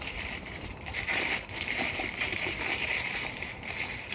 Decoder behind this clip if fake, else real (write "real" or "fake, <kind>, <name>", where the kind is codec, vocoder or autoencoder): fake, vocoder, BigVGAN v2